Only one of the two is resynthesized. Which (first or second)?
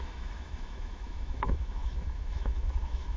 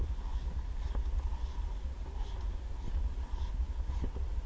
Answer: first